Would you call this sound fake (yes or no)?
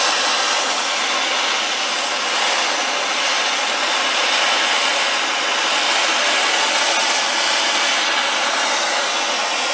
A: no